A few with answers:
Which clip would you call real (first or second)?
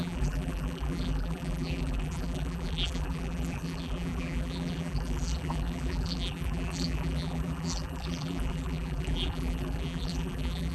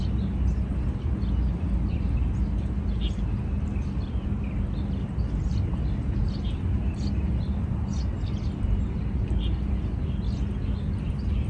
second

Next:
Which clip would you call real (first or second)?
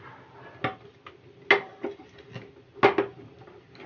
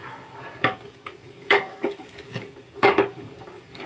first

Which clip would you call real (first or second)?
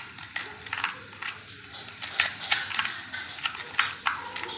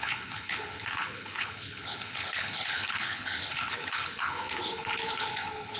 first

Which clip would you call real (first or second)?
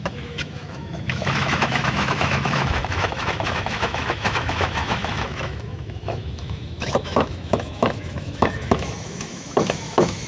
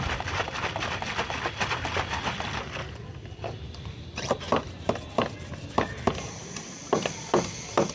second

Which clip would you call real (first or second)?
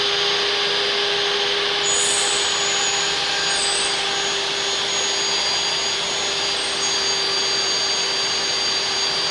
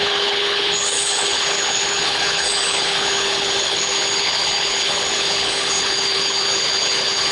first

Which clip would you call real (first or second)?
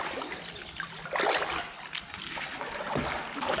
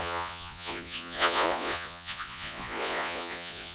first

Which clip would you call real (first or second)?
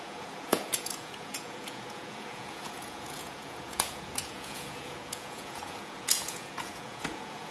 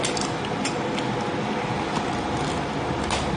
second